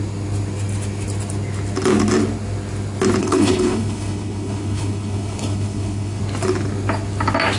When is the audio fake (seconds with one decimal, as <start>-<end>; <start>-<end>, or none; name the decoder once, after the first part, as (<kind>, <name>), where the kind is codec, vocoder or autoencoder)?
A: 3.2-6.2 (codec, HILCodec)